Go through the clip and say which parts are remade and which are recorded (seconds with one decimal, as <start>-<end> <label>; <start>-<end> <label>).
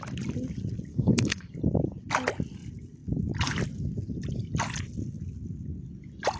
0.0-0.9 recorded; 0.9-1.5 remade; 1.5-6.4 recorded